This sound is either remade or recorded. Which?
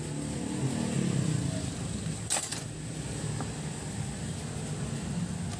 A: recorded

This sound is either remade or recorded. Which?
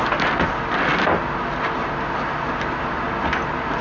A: recorded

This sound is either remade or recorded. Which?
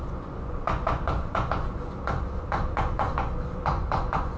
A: remade